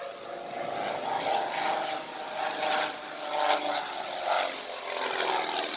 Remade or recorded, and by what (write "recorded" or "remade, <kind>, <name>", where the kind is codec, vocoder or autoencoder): recorded